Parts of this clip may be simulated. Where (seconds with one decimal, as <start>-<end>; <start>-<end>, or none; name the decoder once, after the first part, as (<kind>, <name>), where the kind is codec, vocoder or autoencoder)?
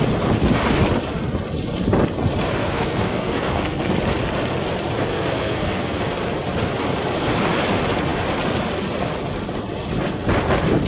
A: 2.6-3.9 (codec, SNAC); 5.1-6.0